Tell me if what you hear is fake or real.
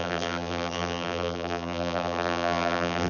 fake